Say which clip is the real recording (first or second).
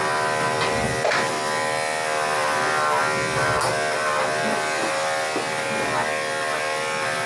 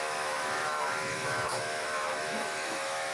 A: first